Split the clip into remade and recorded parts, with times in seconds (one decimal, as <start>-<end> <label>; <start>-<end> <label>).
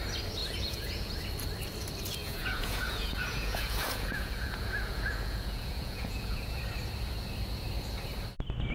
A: 0.0-0.4 recorded; 0.4-1.1 remade; 1.1-2.2 recorded; 2.2-6.6 remade; 6.6-8.7 recorded